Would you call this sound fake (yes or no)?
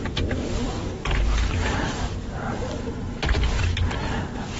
no